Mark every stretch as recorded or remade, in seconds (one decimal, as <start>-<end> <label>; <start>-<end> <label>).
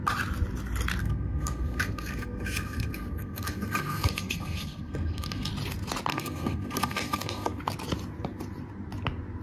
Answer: 0.0-1.0 recorded; 1.0-5.5 remade; 5.5-6.1 recorded; 6.1-7.6 remade; 7.6-9.4 recorded